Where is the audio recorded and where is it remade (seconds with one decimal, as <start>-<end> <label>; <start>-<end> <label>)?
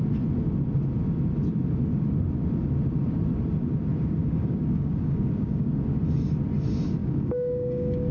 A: 0.0-4.2 recorded; 4.2-5.8 remade; 5.8-7.0 recorded; 7.0-8.1 remade